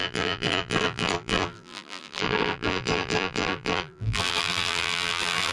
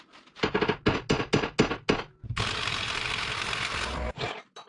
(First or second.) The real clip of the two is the second